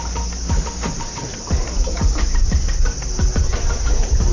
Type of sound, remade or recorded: recorded